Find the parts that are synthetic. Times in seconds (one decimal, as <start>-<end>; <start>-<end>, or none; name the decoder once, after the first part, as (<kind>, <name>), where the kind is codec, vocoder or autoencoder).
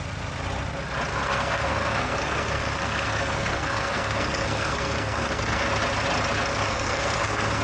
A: 1.1-5.7 (codec, SNAC); 6.5-7.6